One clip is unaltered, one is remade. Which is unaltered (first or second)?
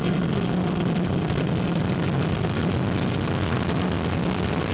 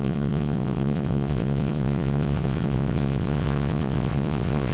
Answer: first